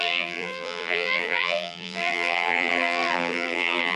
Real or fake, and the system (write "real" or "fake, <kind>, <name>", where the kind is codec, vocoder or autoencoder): fake, vocoder, BigVGAN v2